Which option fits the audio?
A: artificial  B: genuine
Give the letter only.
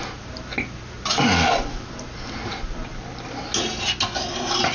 B